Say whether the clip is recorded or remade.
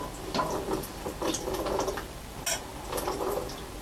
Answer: recorded